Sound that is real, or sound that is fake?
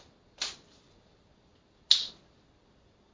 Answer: real